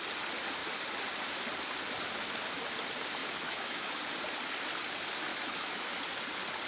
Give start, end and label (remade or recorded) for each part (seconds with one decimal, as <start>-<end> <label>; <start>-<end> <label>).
0.0-3.2 recorded; 3.2-4.0 remade; 4.0-5.3 recorded; 5.3-5.9 remade; 5.9-6.7 recorded